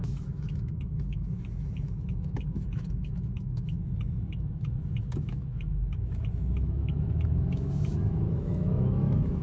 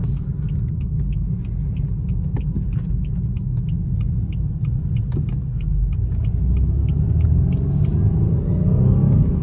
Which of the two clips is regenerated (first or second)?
first